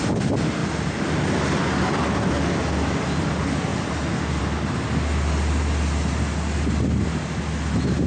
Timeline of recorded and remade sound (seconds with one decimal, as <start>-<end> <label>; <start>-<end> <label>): 0.0-8.1 recorded

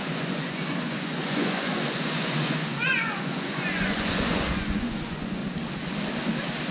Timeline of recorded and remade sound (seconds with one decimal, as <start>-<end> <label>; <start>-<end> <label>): 0.0-5.4 remade; 5.4-6.7 recorded

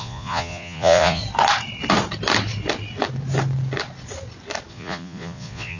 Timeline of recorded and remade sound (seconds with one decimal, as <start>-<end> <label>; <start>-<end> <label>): 0.0-1.2 remade; 1.2-4.7 recorded; 4.7-5.8 remade

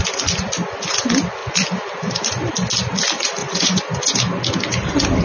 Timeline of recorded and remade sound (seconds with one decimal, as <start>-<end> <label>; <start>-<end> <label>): 0.0-3.4 recorded; 3.4-4.0 remade; 4.0-5.2 recorded

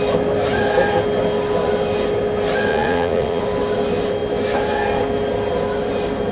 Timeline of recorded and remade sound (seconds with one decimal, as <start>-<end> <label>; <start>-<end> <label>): 0.0-2.7 recorded; 2.7-3.4 remade; 3.4-6.3 recorded

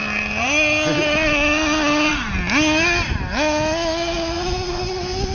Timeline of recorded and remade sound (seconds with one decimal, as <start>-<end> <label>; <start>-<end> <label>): 0.0-5.3 recorded